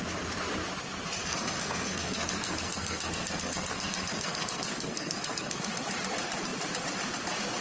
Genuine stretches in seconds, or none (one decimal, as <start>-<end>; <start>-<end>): 0.0-1.2; 5.7-7.6